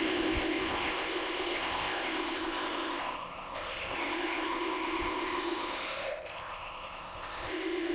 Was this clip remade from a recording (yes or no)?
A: yes